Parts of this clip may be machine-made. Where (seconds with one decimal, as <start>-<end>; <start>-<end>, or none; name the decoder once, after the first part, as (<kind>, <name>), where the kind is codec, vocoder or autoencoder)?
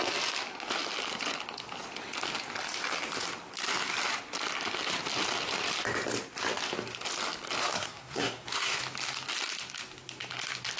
7.6-8.8 (codec, SNAC)